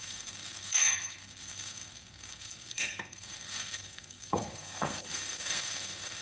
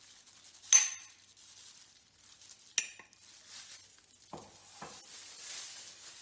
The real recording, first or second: second